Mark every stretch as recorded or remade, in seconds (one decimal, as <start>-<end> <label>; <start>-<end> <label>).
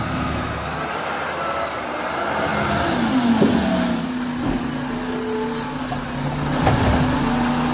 0.0-7.7 recorded